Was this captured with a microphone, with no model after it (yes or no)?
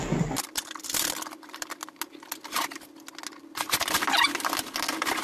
yes